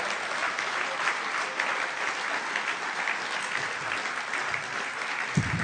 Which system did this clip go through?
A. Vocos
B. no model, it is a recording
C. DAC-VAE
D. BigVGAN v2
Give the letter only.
B